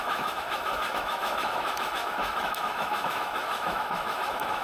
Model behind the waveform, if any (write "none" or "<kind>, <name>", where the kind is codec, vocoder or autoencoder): autoencoder, DAC-VAE